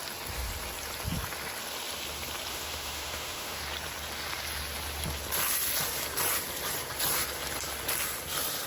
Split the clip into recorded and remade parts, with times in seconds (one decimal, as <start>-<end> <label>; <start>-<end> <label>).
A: 0.0-2.5 recorded; 2.5-3.6 remade; 3.6-8.7 recorded

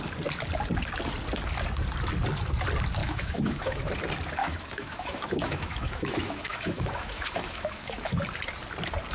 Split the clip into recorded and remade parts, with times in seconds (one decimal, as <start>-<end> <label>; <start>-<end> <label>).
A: 0.0-3.0 recorded; 3.0-3.8 remade; 3.8-4.4 recorded; 4.4-8.2 remade; 8.2-9.1 recorded

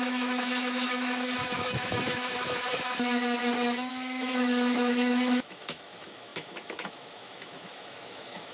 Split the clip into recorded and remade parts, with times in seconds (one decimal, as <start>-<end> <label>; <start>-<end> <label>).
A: 0.0-3.4 remade; 3.4-3.9 recorded; 3.9-8.5 remade

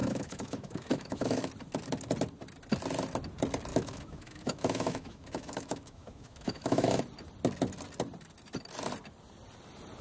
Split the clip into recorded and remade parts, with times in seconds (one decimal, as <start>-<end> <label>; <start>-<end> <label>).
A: 0.0-1.5 remade; 1.5-3.7 recorded; 3.7-7.0 remade; 7.0-10.0 recorded

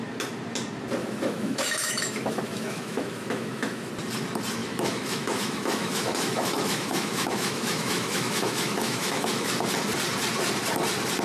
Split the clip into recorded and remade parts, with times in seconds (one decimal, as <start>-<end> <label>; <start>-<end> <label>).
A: 0.0-1.0 recorded; 1.0-3.9 remade; 3.9-4.6 recorded; 4.6-9.5 remade; 9.5-11.2 recorded

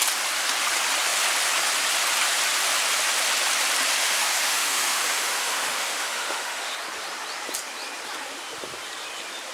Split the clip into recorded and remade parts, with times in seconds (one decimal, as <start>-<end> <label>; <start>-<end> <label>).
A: 0.0-4.0 recorded; 4.0-6.7 remade; 6.7-9.5 recorded

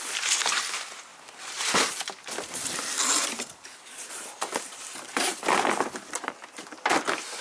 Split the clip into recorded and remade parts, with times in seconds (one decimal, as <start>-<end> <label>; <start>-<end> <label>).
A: 0.0-7.4 recorded

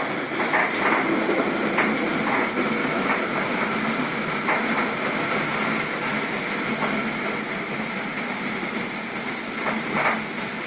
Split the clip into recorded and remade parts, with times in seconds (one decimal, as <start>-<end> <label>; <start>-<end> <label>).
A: 0.0-2.8 recorded; 2.8-3.7 remade; 3.7-6.1 recorded; 6.1-7.2 remade; 7.2-10.7 recorded